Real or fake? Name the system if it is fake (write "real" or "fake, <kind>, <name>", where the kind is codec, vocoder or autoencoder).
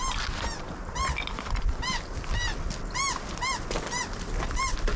real